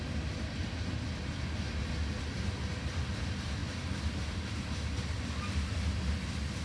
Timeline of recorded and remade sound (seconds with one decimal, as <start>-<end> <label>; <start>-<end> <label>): 0.0-6.6 recorded